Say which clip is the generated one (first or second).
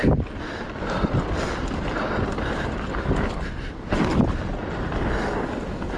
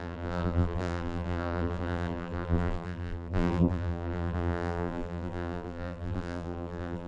second